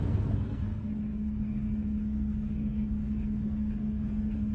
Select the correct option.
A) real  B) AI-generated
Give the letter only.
B